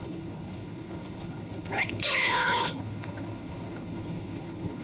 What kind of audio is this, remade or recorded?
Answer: remade